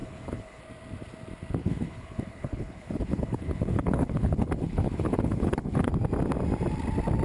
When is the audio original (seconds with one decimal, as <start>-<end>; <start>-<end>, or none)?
0.6-1.6; 5.9-7.2